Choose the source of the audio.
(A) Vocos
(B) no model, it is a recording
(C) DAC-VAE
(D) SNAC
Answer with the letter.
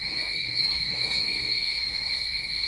D